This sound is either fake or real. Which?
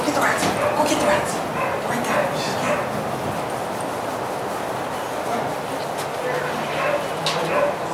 real